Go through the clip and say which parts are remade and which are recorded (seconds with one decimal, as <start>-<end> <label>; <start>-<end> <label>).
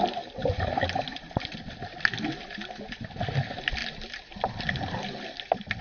0.0-5.8 recorded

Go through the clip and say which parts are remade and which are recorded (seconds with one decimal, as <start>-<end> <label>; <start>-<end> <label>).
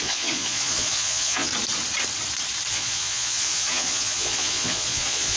0.0-1.5 remade; 1.5-2.7 recorded; 2.7-5.4 remade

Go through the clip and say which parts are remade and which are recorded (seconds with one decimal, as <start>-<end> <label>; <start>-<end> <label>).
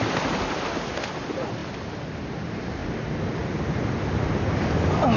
0.0-5.2 recorded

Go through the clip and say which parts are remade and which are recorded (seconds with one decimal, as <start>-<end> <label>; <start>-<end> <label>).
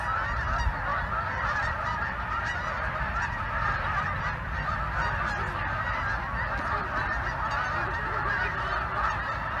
0.0-0.9 recorded; 0.9-5.1 remade; 5.1-9.6 recorded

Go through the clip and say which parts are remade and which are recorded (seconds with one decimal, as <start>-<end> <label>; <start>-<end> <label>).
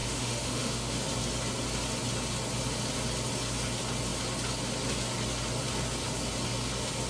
0.0-1.0 remade; 1.0-7.1 recorded